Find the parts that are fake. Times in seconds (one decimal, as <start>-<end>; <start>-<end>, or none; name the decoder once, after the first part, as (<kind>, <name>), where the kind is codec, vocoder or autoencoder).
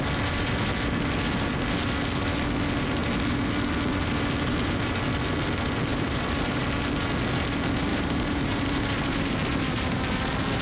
5.9-6.6 (vocoder, BigVGAN v2); 7.9-10.0